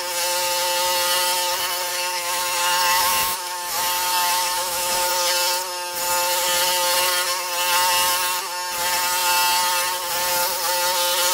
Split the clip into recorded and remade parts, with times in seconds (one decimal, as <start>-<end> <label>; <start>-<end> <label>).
0.0-1.9 recorded; 1.9-5.1 remade; 5.1-11.3 recorded